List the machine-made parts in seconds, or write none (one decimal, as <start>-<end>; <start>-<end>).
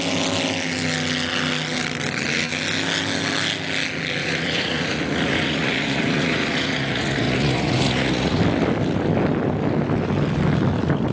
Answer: 4.2-8.4